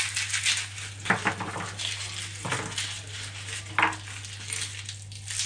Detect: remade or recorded recorded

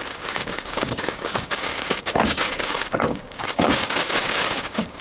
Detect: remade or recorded remade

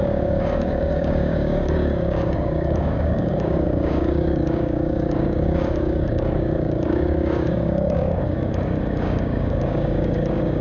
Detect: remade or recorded remade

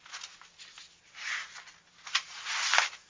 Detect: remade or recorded recorded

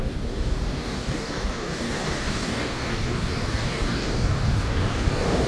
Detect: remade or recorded remade